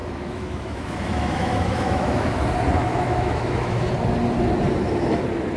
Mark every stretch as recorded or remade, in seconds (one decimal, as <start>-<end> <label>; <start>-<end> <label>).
0.0-2.4 remade; 2.4-2.9 recorded; 2.9-3.9 remade; 3.9-5.6 recorded